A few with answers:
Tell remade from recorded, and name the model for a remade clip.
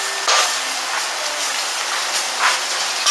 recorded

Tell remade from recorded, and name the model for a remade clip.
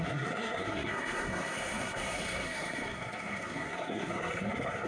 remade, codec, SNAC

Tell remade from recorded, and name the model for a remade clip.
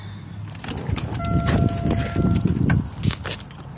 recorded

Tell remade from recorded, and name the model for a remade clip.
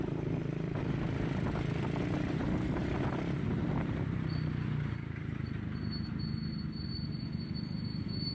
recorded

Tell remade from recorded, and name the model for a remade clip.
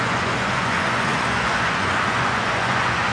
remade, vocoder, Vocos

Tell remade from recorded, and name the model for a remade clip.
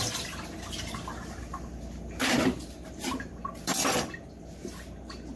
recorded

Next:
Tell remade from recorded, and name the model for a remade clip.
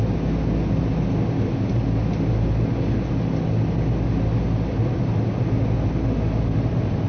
recorded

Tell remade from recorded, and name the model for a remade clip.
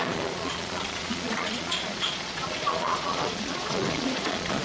remade, vocoder, Vocos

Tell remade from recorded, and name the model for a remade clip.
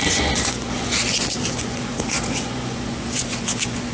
remade, vocoder, Vocos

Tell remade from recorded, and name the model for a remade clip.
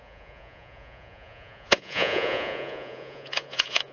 remade, vocoder, Vocos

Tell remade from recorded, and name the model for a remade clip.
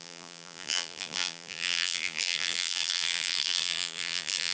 remade, vocoder, BigVGAN v2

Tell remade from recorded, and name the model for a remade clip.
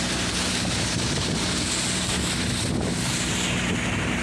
recorded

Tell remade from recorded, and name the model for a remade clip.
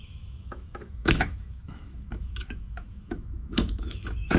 remade, autoencoder, DAC-VAE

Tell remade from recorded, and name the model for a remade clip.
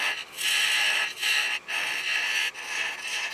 recorded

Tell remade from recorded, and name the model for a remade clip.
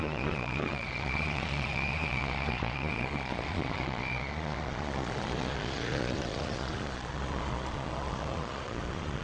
remade, vocoder, Vocos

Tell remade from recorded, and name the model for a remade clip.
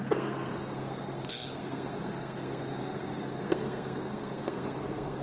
remade, codec, SNAC